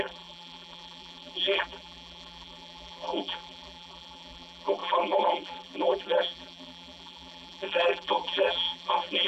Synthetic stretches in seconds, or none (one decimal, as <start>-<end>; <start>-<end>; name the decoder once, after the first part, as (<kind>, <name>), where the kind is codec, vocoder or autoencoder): 0.0-9.3 (vocoder, BigVGAN v2)